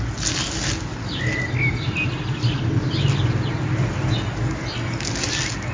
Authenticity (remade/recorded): recorded